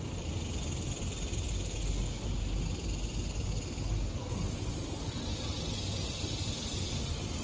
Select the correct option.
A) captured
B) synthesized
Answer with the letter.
A